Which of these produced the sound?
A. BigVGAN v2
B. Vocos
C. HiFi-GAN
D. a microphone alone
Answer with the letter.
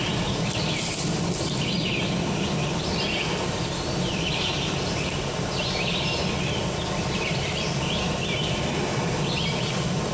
A